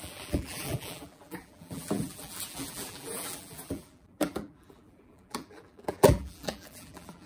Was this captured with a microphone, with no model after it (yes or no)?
no